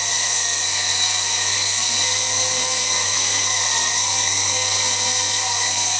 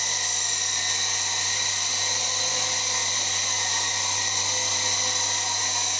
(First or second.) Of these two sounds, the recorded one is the second